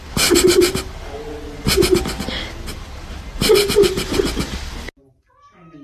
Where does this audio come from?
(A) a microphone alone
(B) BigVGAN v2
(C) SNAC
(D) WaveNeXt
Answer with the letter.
A